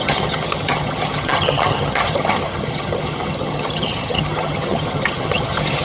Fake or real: fake